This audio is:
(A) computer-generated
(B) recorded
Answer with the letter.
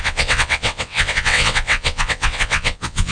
A